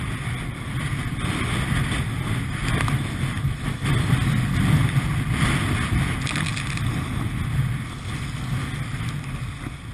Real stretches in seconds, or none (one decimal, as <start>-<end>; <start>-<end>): 0.0-9.9